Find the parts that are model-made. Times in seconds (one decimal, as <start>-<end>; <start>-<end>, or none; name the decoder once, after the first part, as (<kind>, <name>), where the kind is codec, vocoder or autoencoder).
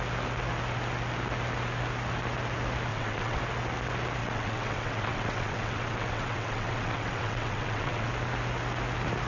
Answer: 2.9-3.4 (vocoder, WaveNeXt); 4.2-8.1